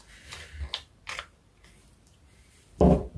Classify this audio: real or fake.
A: real